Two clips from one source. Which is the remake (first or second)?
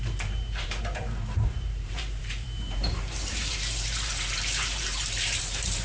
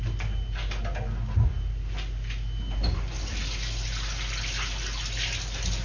first